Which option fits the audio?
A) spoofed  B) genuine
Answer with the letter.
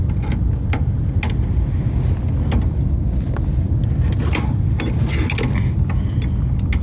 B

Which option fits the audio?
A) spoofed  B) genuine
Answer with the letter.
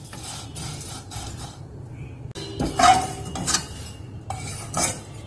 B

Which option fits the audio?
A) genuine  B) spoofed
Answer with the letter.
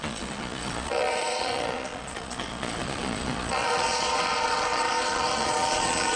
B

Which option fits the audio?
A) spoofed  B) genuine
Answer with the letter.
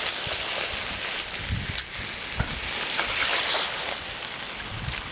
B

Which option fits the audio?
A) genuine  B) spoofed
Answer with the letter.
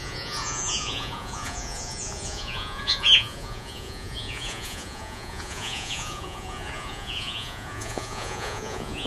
B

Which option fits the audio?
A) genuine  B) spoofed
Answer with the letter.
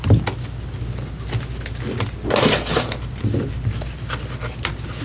A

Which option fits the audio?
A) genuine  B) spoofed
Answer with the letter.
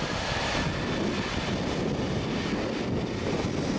A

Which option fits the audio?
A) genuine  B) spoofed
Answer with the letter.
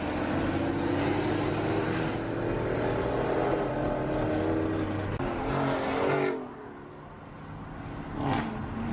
A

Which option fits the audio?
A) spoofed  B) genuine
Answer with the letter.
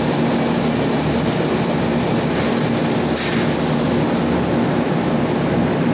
B